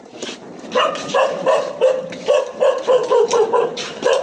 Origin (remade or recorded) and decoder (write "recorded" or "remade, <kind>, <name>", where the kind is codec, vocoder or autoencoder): remade, vocoder, BigVGAN v2